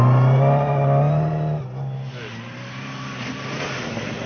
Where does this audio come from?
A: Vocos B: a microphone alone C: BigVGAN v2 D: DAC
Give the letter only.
B